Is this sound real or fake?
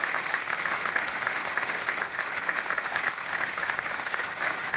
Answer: fake